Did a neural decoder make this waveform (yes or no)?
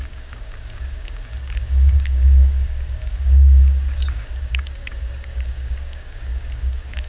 yes